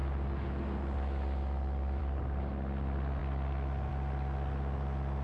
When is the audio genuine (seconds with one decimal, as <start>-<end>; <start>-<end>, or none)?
0.0-5.2